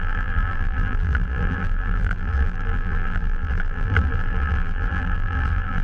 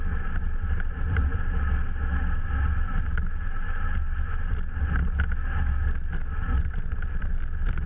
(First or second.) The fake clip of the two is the first